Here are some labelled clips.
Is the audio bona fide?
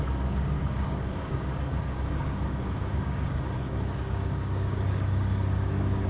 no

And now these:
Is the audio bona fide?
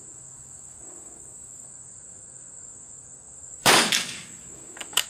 no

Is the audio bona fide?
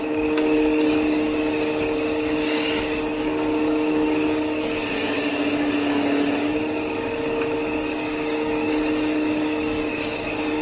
no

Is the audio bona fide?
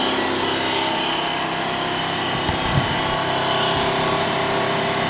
yes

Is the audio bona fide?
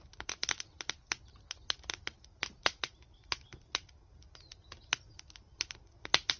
yes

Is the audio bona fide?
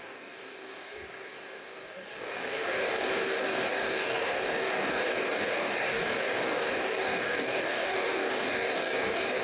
no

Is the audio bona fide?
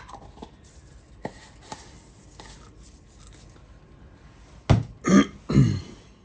yes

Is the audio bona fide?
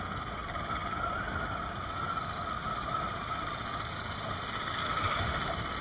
yes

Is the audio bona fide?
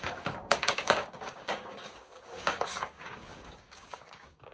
no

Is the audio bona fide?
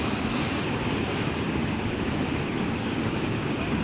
no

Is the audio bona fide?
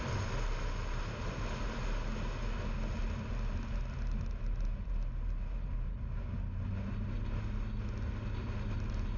yes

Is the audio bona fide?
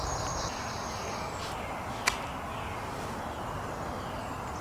yes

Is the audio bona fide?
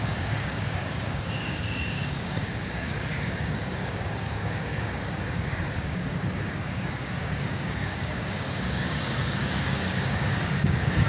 no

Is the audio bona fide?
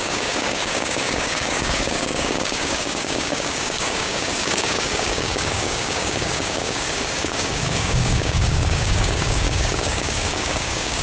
no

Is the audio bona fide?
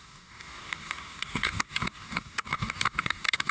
no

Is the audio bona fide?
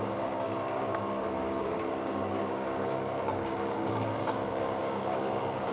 no